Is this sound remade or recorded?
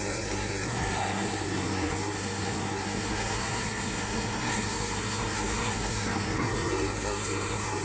remade